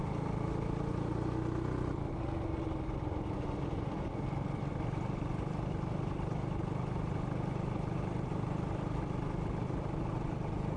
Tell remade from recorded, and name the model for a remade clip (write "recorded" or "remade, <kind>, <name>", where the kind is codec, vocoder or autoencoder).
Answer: recorded